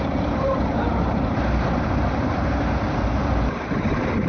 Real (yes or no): no